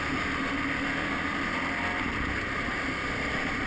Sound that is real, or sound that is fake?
real